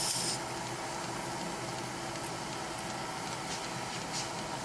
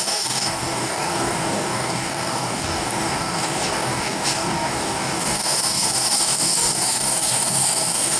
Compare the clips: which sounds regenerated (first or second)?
second